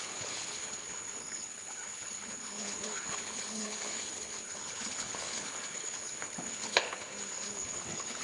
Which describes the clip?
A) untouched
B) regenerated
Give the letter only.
B